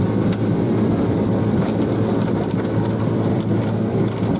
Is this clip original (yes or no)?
no